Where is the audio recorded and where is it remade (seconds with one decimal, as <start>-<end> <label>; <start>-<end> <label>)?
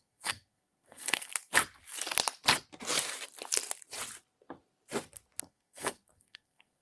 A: 0.0-1.3 remade; 1.3-5.4 recorded; 5.4-6.8 remade